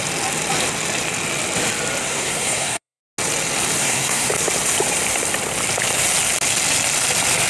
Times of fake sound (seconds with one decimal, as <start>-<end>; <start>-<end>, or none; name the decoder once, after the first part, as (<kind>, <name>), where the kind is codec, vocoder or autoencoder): 2.0-3.0 (codec, SNAC); 3.8-4.3